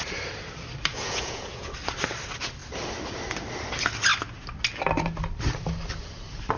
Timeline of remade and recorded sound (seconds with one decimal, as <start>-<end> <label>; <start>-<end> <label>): 0.0-0.9 recorded; 0.9-1.7 remade; 1.7-6.6 recorded